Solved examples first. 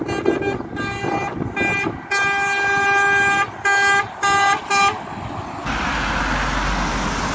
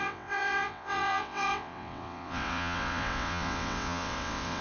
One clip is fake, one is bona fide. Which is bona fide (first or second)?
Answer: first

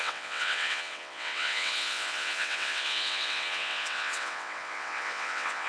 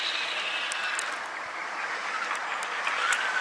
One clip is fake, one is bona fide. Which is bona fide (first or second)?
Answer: second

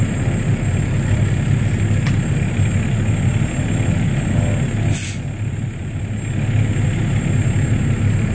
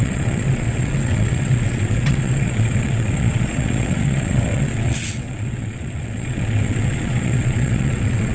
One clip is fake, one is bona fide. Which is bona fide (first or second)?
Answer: first